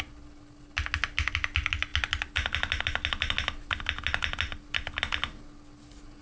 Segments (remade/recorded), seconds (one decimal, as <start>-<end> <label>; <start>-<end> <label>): 0.0-6.2 recorded